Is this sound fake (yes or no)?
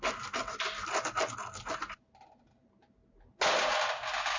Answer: no